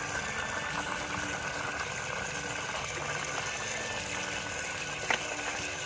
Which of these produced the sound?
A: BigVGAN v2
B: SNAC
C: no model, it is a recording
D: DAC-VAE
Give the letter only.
C